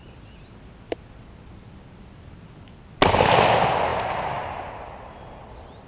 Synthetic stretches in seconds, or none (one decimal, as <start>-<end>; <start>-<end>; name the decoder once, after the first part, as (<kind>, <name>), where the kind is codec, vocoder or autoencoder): none